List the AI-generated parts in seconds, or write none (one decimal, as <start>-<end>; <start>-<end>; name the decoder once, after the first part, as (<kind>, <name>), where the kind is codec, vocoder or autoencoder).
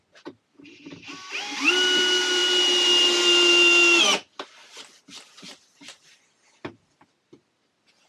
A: none